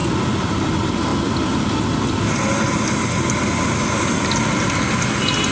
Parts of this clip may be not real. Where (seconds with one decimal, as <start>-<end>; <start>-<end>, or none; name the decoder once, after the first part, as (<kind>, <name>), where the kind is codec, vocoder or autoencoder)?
none